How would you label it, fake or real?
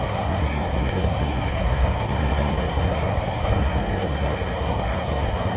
fake